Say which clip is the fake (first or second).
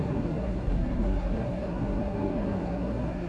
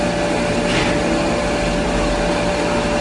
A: first